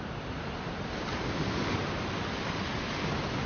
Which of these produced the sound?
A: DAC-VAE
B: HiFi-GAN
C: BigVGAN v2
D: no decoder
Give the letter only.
D